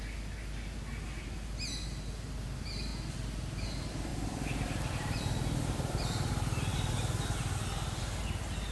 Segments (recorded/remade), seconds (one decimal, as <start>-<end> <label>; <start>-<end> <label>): 0.0-4.1 recorded; 4.1-6.3 remade; 6.3-8.7 recorded

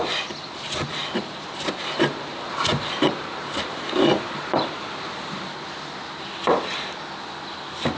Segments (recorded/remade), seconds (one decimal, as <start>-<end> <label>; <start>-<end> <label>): 0.0-0.9 recorded; 0.9-4.9 remade; 4.9-8.0 recorded

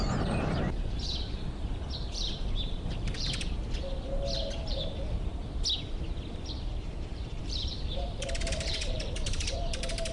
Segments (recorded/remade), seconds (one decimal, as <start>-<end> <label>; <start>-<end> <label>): 0.0-3.6 remade; 3.6-4.8 recorded; 4.8-5.3 remade; 5.3-7.4 recorded; 7.4-10.1 remade

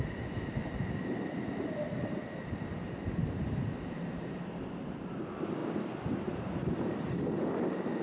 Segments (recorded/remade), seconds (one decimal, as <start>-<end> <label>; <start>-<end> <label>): 0.0-0.6 recorded; 0.6-3.1 remade; 3.1-8.0 recorded

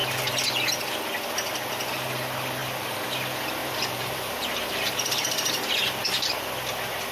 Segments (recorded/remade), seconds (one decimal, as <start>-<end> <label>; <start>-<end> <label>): 0.0-3.6 recorded; 3.6-5.7 remade; 5.7-7.1 recorded